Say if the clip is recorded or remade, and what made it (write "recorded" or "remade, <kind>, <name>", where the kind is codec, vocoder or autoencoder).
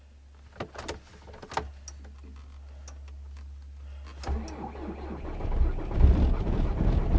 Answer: recorded